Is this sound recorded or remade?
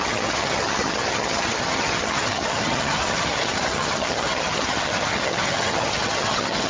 remade